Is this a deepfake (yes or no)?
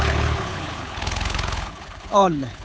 yes